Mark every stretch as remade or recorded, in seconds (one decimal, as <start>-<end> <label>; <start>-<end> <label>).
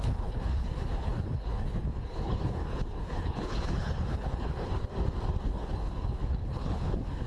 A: 0.0-4.9 remade; 4.9-5.4 recorded; 5.4-7.3 remade